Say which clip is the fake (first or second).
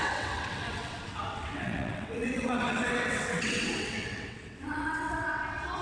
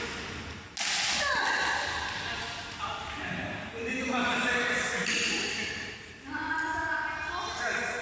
first